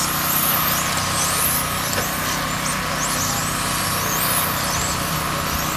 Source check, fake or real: real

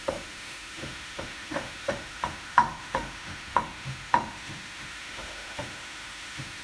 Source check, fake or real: fake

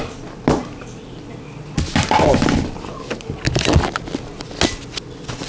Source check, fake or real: real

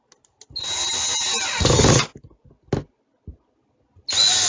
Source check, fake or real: real